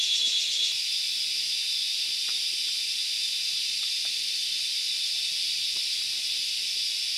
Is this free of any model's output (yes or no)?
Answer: yes